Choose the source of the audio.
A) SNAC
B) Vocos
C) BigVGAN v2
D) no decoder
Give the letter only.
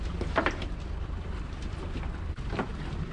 C